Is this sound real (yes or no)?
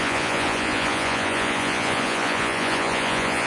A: no